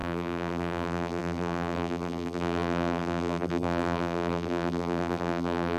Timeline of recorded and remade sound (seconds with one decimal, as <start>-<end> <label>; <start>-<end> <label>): 0.0-5.8 remade